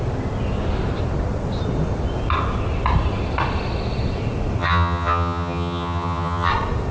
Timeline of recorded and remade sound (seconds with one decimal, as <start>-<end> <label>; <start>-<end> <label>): 0.0-4.6 recorded; 4.6-6.5 remade; 6.5-6.9 recorded

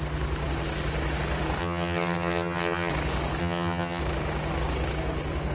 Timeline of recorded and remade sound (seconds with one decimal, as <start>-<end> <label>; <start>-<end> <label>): 0.0-1.6 recorded; 1.6-2.9 remade; 2.9-3.4 recorded; 3.4-4.0 remade; 4.0-5.5 recorded

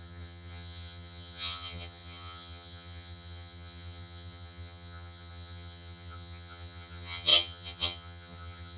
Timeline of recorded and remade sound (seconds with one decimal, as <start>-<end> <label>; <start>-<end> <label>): 0.0-8.8 remade

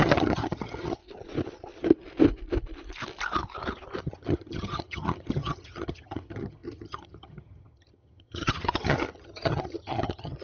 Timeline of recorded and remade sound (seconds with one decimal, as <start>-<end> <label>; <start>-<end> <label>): 0.0-1.0 remade; 1.0-4.0 recorded; 4.0-10.4 remade

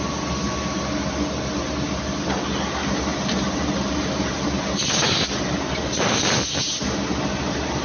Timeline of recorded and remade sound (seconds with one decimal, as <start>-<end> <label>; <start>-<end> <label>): 0.0-7.8 recorded